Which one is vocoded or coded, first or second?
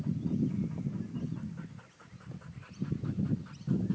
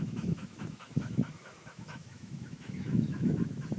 second